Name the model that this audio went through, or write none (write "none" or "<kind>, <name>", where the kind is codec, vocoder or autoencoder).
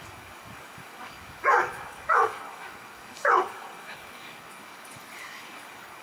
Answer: codec, DAC